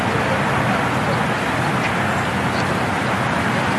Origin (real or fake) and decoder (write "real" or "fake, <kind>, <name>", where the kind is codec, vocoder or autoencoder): real